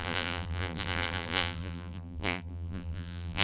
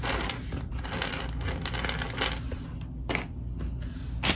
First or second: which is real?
second